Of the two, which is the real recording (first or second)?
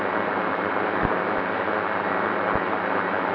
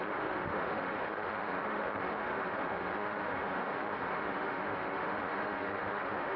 first